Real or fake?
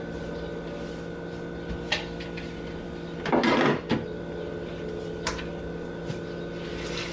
fake